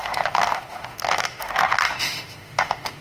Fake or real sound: fake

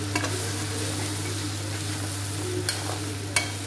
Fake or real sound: real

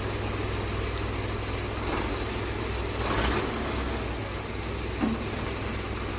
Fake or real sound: real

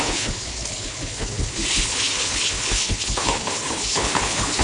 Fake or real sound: fake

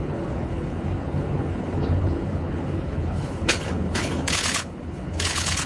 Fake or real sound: fake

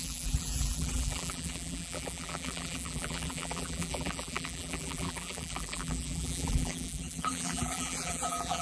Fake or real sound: fake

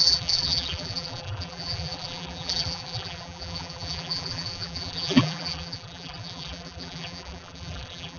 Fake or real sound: fake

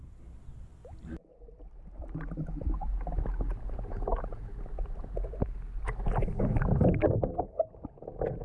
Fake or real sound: real